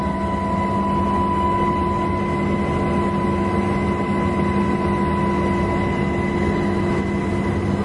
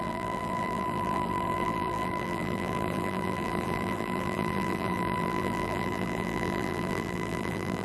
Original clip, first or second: first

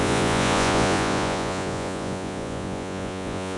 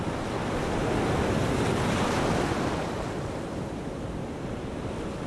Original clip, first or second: second